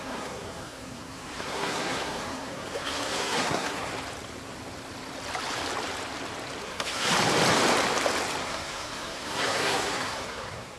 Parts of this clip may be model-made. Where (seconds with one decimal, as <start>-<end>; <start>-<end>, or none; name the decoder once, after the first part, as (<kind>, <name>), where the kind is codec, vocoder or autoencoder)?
0.0-3.9 (codec, SNAC); 6.6-7.1; 8.4-10.8